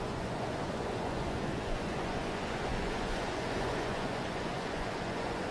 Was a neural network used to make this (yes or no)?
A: yes